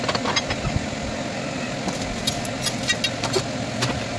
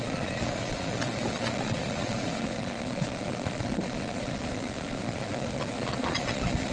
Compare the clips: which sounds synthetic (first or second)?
second